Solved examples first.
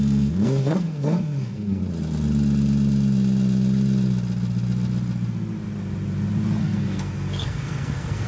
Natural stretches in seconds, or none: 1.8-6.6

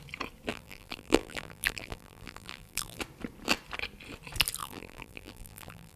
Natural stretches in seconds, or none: 0.0-0.5; 3.0-4.6

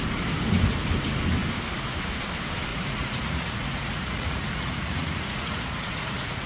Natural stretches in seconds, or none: 0.0-2.7

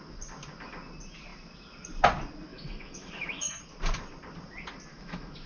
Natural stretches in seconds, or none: 0.0-2.5; 3.6-4.9

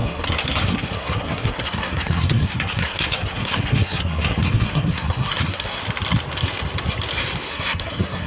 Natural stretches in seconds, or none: 5.8-7.5